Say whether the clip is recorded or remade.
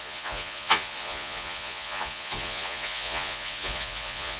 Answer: remade